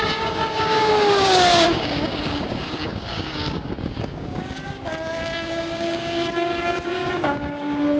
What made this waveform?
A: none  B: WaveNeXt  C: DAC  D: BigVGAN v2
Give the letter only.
C